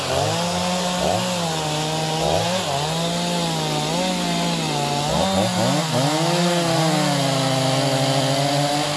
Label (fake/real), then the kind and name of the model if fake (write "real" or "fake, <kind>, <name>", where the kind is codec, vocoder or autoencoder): real